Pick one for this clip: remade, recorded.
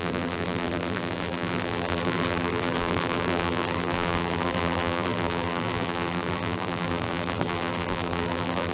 remade